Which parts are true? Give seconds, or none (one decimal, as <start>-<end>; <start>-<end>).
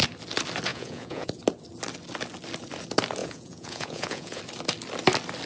0.0-0.7; 1.3-3.2; 4.4-5.5